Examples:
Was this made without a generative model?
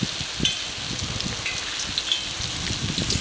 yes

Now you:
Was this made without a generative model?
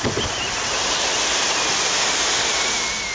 yes